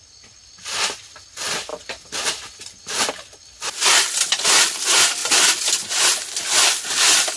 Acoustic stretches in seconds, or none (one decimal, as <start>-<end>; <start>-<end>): 0.0-7.4